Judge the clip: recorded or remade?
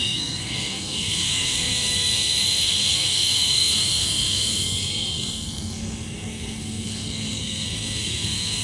remade